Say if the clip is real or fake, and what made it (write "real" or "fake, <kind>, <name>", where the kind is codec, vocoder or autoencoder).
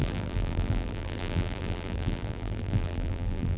fake, vocoder, BigVGAN v2